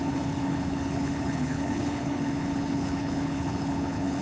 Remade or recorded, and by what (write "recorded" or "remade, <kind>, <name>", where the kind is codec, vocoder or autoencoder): remade, codec, HILCodec